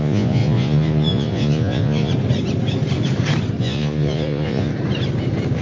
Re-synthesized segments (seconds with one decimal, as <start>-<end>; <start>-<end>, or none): 0.0-2.1; 3.6-4.7